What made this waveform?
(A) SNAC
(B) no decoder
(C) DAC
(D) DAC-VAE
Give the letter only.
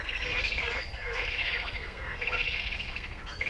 A